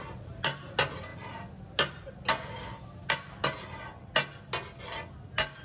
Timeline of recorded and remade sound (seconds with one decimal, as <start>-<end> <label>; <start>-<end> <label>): 0.0-5.6 recorded